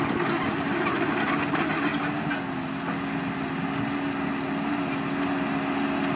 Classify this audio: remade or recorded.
recorded